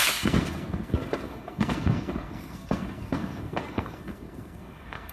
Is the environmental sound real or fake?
fake